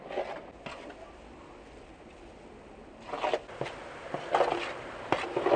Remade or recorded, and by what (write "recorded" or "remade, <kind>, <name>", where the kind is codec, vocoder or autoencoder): recorded